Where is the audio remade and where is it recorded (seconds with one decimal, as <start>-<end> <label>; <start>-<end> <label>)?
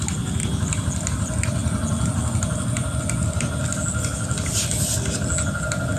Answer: 0.0-6.0 recorded